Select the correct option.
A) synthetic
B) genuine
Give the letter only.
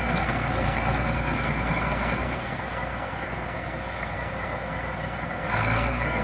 A